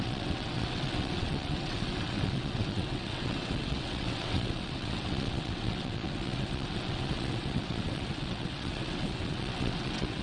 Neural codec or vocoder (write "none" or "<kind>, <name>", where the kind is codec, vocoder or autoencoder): vocoder, WaveNeXt